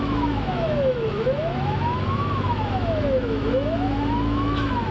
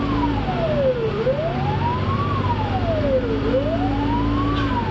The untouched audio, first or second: second